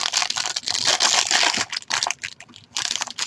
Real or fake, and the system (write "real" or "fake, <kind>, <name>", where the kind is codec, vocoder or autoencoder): real